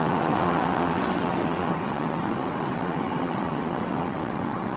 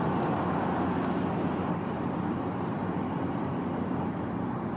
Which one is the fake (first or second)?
first